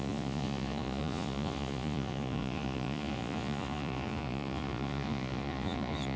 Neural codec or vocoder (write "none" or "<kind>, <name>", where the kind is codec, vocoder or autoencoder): vocoder, Vocos